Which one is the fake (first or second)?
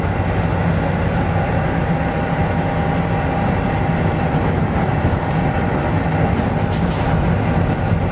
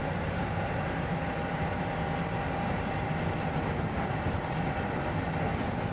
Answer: second